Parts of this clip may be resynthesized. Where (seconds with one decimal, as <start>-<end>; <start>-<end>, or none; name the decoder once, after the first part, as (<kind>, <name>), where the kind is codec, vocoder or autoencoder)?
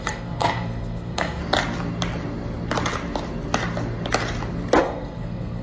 0.0-1.4 (codec, SNAC); 4.8-5.6